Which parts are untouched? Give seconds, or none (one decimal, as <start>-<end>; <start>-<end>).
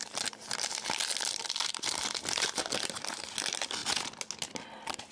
0.0-5.1